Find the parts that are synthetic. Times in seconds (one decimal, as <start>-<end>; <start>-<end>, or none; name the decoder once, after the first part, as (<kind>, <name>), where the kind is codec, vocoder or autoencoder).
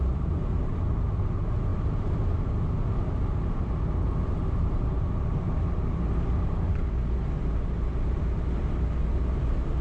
none